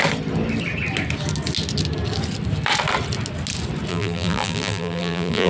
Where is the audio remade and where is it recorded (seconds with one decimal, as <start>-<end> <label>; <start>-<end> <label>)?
0.0-3.9 recorded; 3.9-5.5 remade